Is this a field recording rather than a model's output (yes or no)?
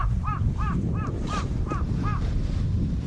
no